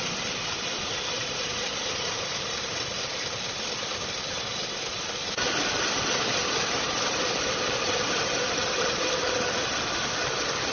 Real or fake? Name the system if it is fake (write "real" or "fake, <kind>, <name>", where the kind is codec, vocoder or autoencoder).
real